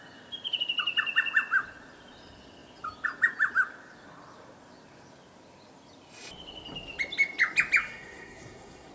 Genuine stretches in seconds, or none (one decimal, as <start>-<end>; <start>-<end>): 0.0-7.8